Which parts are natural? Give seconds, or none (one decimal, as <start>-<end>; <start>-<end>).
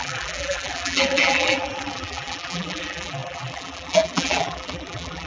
none